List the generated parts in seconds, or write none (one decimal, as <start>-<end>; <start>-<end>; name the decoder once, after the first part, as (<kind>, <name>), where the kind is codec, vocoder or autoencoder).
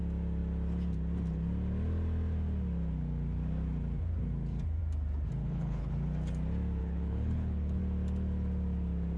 5.4-5.9 (codec, HILCodec); 6.8-7.8